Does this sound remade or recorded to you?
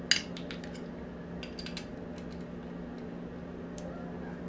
recorded